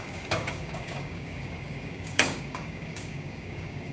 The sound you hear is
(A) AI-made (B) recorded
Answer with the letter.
A